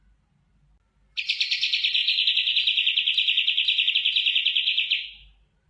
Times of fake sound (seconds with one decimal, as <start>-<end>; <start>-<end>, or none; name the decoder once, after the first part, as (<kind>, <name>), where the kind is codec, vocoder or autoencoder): none